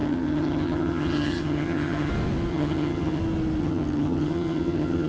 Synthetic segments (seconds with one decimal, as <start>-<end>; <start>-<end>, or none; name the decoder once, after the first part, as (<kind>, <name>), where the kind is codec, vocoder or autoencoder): 0.0-2.1 (vocoder, HiFi-GAN); 2.5-3.2; 3.6-5.1

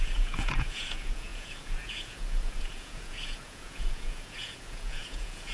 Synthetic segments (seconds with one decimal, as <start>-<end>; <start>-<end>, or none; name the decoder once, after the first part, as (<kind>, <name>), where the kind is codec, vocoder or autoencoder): 0.0-5.5 (vocoder, Vocos)

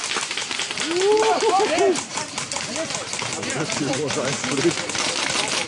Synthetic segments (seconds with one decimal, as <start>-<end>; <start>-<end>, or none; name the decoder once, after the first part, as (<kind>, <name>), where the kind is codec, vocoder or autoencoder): none

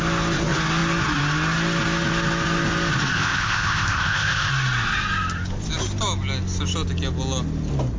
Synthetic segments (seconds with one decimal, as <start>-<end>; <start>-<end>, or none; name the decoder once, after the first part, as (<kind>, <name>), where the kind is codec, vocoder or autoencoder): 3.1-4.5 (codec, ZipCodec)

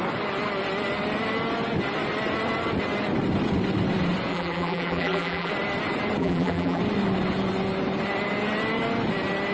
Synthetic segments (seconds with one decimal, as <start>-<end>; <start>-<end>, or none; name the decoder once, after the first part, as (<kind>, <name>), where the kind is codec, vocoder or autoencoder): 4.3-5.5 (vocoder, BigVGAN v2); 6.2-6.8

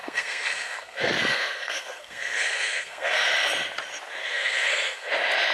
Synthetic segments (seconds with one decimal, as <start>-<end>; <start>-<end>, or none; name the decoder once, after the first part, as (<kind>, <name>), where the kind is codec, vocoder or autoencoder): 0.0-3.3 (codec, SNAC); 4.2-5.1

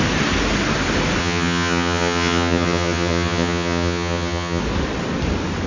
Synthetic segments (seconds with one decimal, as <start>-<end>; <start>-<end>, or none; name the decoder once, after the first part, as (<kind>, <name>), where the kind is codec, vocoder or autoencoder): 1.2-4.6 (vocoder, HiFi-GAN)